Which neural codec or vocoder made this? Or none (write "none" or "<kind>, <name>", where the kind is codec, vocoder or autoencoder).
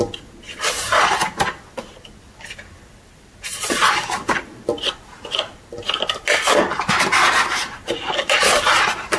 none